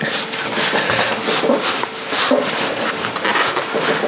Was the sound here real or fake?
real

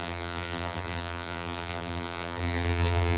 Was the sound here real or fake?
fake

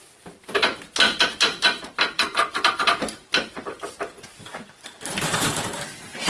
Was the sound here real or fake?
fake